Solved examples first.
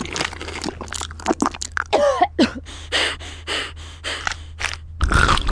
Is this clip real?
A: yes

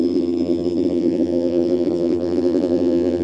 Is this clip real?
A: no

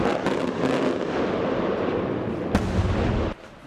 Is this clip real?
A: yes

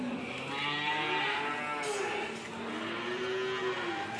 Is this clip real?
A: yes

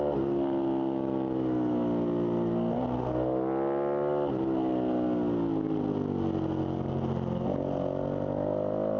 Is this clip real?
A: yes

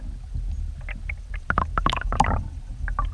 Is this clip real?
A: yes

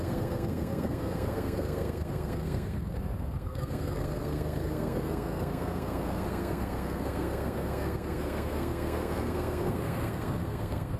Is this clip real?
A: no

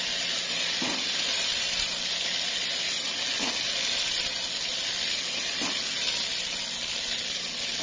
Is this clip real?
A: yes